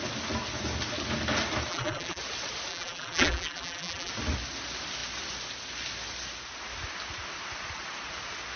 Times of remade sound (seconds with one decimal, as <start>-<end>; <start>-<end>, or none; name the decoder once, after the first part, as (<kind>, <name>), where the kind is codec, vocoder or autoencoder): 1.7-2.2 (vocoder, BigVGAN v2); 2.7-4.1